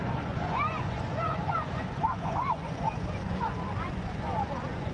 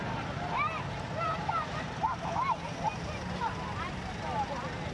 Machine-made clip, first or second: first